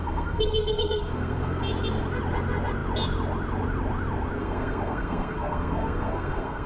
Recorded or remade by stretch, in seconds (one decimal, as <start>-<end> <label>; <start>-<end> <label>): 0.0-1.6 remade; 1.6-4.4 recorded; 4.4-6.7 remade